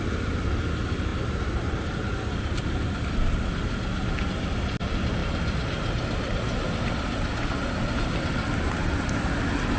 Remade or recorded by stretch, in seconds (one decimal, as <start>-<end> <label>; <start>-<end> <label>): 0.0-9.8 recorded